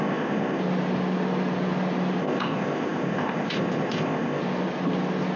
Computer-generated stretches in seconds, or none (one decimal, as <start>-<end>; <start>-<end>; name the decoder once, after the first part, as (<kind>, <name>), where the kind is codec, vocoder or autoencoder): 0.0-0.6 (codec, ZipCodec); 2.2-4.4